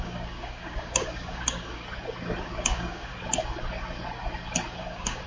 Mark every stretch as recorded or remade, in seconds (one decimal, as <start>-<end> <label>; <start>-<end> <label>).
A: 0.0-1.8 remade; 1.8-2.4 recorded; 2.4-3.1 remade; 3.1-4.8 recorded; 4.8-5.3 remade